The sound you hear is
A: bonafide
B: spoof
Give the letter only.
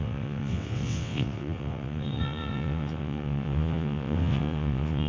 B